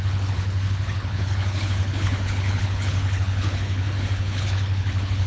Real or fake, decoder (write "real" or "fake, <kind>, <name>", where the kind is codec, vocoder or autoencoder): fake, codec, HILCodec